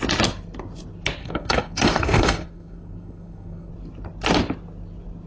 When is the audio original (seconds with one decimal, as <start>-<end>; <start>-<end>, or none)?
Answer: 0.0-1.2; 3.7-5.3

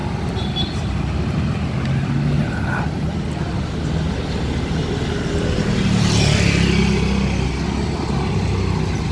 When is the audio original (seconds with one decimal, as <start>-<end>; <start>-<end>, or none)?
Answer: 0.0-9.1

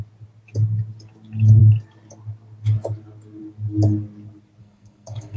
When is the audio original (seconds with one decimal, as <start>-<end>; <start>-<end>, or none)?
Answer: 0.0-4.6

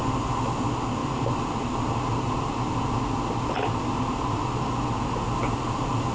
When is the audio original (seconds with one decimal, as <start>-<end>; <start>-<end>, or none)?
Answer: 0.0-6.1

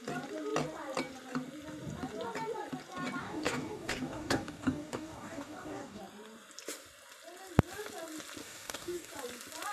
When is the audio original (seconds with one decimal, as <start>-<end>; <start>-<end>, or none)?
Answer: 0.0-3.2; 6.0-8.4; 9.1-9.7

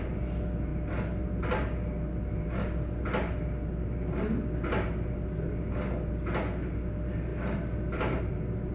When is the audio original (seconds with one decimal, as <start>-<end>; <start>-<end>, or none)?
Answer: 0.0-8.7

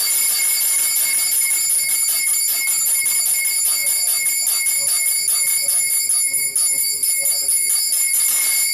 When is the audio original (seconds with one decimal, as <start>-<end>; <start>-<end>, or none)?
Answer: 0.0-8.7